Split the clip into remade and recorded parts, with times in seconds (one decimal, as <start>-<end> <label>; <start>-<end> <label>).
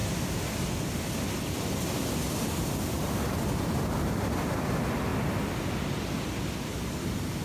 0.0-7.4 recorded